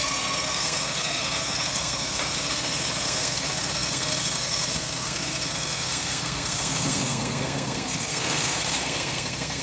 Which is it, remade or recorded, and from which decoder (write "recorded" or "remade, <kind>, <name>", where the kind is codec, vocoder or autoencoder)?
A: remade, codec, SNAC